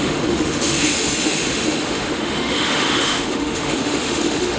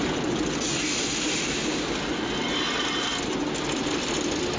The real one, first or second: second